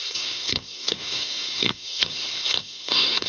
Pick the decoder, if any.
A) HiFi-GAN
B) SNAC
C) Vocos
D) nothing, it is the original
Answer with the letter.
B